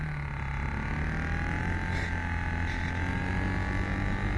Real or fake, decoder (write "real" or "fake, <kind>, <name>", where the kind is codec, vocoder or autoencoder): real